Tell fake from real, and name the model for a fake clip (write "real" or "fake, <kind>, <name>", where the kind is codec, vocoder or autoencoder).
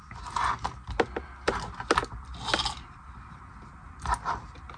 real